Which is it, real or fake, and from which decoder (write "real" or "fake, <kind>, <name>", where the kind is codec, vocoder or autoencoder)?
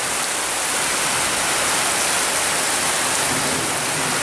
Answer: real